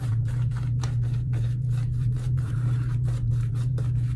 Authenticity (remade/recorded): remade